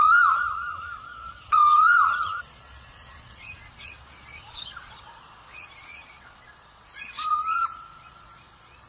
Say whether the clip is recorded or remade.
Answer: remade